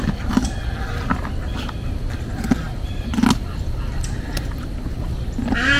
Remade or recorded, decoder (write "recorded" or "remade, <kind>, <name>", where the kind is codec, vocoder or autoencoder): recorded